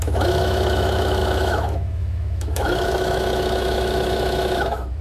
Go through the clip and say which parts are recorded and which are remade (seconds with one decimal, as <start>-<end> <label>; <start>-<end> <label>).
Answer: 0.0-5.0 remade